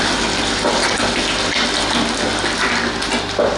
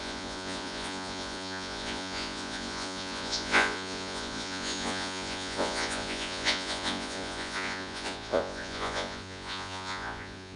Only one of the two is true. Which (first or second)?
first